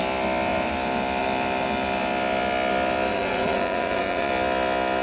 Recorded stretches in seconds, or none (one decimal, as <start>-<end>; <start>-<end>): 0.0-3.1; 4.3-5.0